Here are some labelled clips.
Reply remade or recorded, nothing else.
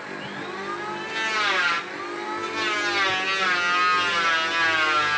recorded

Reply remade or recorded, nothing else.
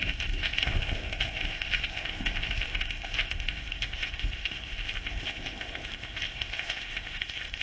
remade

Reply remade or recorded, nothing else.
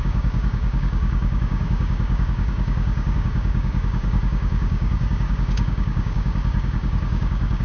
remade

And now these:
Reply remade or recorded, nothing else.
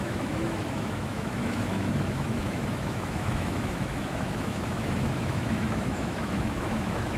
remade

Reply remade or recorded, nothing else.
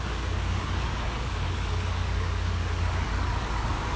remade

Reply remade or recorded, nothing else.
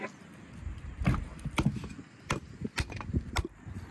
recorded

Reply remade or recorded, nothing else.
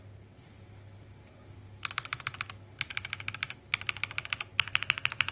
recorded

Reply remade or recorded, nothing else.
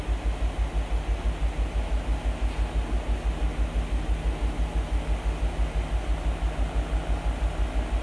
recorded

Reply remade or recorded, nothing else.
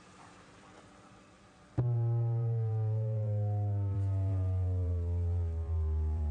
remade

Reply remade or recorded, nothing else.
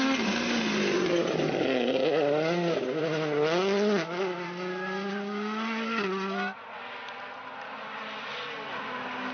recorded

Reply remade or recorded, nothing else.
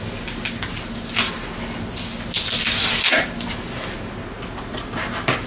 recorded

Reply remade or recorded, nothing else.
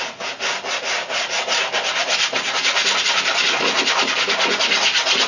recorded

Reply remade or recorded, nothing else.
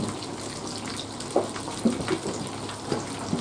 recorded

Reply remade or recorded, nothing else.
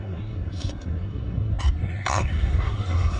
remade